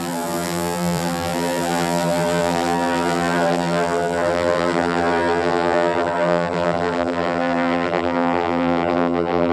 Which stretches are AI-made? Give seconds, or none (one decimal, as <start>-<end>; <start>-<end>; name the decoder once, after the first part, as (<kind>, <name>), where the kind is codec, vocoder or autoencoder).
0.0-9.5 (vocoder, BigVGAN v2)